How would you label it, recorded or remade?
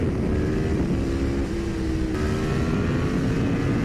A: recorded